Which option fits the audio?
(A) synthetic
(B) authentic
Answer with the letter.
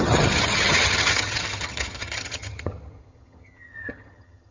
A